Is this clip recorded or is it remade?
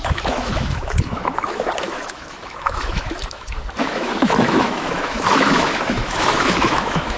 remade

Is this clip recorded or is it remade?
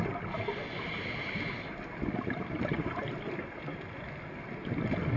recorded